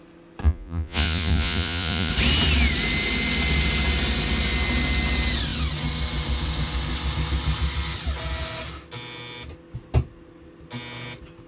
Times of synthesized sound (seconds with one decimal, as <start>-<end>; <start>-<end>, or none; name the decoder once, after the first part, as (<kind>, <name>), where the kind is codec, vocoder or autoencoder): 0.4-2.1 (vocoder, Vocos)